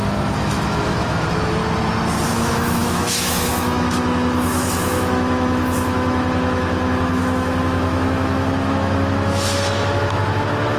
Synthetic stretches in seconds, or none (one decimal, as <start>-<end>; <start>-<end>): 0.0-1.6; 2.3-10.8